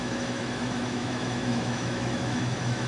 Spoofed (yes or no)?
yes